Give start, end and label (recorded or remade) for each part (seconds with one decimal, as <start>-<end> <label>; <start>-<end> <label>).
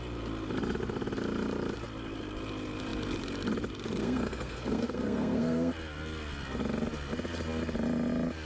0.0-4.0 recorded; 4.0-5.7 remade; 5.7-8.5 recorded